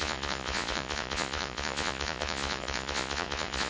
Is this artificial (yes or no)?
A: yes